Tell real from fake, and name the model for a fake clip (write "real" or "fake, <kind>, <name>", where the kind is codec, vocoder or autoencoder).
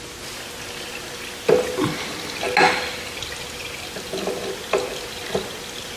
real